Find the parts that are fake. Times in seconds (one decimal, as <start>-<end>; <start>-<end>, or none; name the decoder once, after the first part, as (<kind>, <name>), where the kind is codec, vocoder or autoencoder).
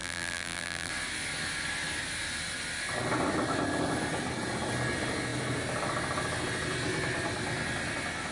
0.0-0.9 (vocoder, BigVGAN v2)